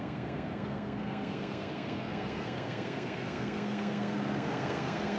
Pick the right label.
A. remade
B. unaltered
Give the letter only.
A